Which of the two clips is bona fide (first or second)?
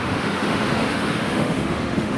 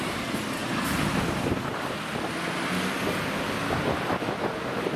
second